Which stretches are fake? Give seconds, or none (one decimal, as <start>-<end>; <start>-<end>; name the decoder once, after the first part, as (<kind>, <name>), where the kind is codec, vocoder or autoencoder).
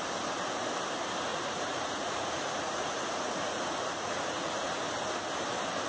1.3-4.8 (vocoder, Vocos)